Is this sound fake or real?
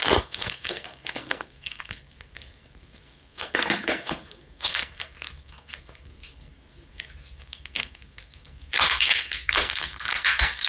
fake